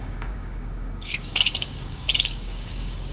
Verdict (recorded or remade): remade